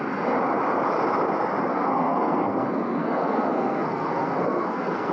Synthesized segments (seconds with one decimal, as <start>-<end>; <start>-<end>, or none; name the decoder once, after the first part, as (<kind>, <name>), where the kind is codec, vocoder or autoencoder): 1.7-5.1 (codec, SNAC)